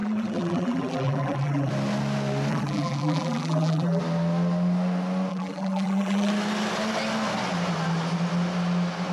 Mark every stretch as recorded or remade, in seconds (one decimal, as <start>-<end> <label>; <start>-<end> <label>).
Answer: 0.0-1.7 remade; 1.7-2.5 recorded; 2.5-4.0 remade; 4.0-5.3 recorded; 5.3-6.3 remade; 6.3-9.1 recorded